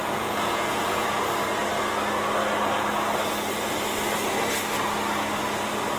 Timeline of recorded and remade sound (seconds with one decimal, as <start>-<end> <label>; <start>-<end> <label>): 0.0-1.2 remade; 1.2-6.0 recorded